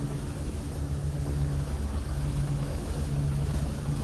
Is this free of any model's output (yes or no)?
no